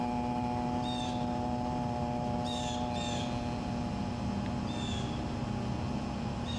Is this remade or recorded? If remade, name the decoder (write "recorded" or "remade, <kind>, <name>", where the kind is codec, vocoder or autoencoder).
recorded